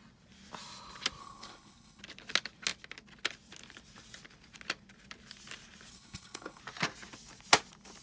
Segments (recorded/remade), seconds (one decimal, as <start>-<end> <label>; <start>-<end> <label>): 0.0-1.2 recorded; 1.2-2.0 remade; 2.0-5.9 recorded; 5.9-6.6 remade; 6.6-8.0 recorded